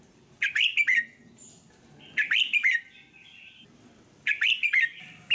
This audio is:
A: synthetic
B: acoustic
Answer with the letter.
B